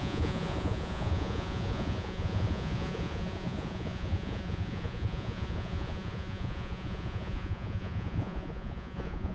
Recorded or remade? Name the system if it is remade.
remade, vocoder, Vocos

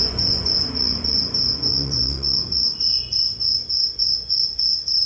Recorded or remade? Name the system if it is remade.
remade, vocoder, Vocos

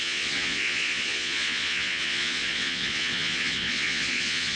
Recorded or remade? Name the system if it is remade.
remade, vocoder, Vocos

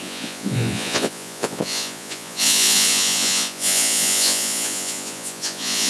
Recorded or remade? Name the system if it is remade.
remade, vocoder, Vocos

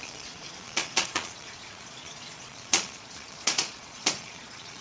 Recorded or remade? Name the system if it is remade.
remade, vocoder, Vocos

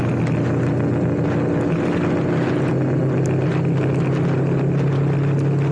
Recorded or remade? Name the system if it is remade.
recorded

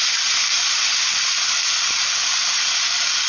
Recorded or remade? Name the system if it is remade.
recorded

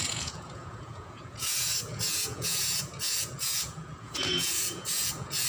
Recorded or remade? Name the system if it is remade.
remade, vocoder, Vocos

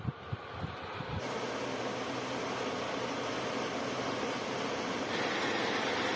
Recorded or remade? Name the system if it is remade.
recorded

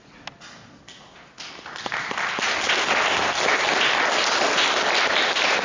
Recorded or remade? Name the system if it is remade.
recorded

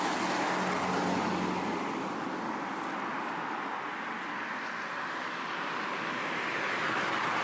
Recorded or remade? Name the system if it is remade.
recorded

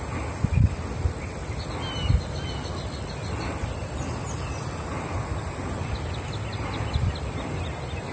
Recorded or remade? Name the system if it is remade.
recorded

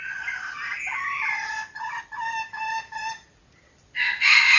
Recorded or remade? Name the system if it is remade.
recorded